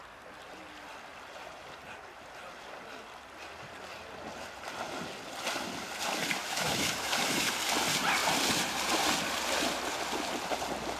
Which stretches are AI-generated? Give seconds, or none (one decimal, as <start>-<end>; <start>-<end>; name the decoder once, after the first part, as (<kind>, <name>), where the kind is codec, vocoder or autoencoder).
6.4-7.5 (autoencoder, DAC-VAE)